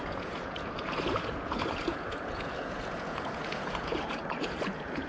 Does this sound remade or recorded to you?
remade